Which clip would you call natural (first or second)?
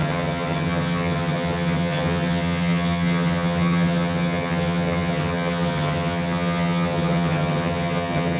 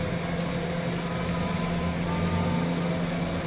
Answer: second